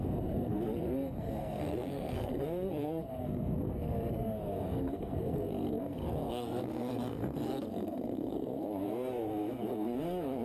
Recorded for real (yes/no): no